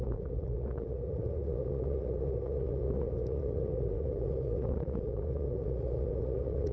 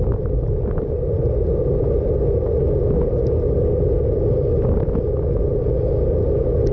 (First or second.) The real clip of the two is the second